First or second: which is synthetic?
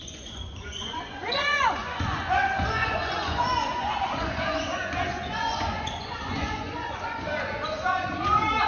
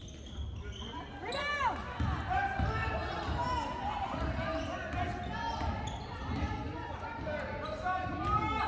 first